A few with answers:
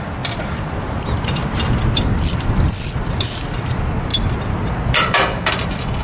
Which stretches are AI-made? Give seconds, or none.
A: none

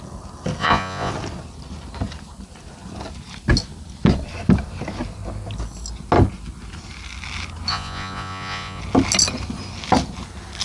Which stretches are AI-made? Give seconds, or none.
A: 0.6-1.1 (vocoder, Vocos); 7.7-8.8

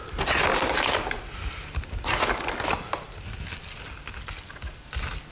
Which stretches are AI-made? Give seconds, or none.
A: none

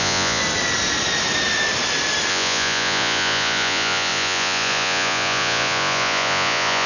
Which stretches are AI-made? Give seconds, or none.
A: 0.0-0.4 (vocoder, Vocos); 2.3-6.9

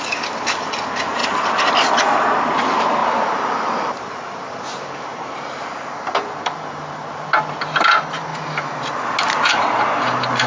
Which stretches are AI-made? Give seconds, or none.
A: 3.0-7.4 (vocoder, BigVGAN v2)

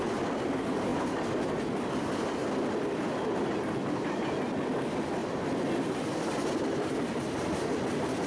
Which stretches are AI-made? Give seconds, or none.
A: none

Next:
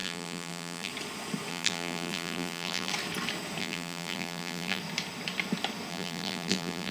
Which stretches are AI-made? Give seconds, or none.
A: 0.0-0.9 (vocoder, BigVGAN v2); 1.5-2.9; 3.6-4.8; 5.9-6.9